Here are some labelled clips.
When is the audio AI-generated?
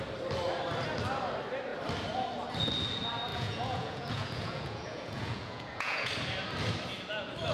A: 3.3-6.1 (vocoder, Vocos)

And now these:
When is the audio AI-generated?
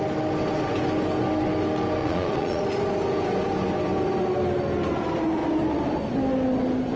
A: 2.0-2.6 (vocoder, Vocos)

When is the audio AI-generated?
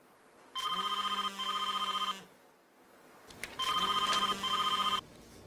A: none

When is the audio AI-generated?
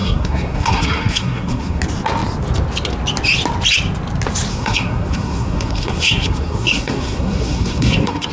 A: 0.0-1.8 (codec, SNAC); 4.5-8.3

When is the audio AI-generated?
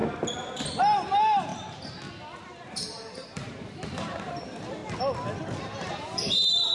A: 0.8-1.5 (vocoder, BigVGAN v2); 2.7-4.8; 5.6-6.7